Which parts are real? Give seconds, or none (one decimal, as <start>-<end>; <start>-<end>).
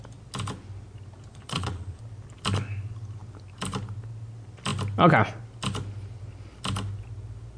0.0-1.3; 2.0-7.6